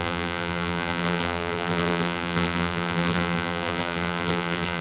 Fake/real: fake